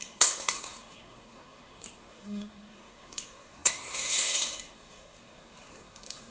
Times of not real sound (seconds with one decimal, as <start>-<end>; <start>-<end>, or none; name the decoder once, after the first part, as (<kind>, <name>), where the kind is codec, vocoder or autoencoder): 0.0-6.3 (codec, SNAC)